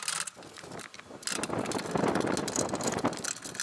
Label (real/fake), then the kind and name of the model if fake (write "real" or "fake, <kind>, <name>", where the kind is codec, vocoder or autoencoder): real